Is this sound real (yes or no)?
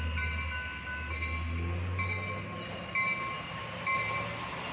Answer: yes